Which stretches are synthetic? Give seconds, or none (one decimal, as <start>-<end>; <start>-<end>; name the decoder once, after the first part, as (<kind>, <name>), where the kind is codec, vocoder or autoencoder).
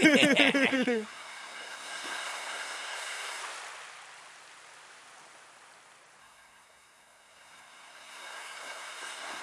0.7-3.4 (codec, SNAC); 6.2-9.4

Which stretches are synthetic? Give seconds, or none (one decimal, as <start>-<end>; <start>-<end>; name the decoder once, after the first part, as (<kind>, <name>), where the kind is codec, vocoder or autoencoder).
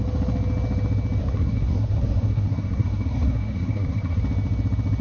1.2-4.2 (codec, SNAC)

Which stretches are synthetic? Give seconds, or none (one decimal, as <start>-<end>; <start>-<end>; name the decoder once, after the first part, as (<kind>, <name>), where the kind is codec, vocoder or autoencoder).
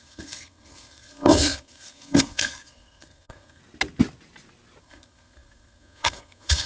0.0-3.6 (codec, SNAC); 4.8-6.7